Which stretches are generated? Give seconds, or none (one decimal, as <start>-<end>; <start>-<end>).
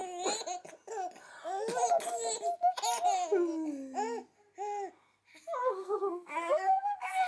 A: 5.6-7.3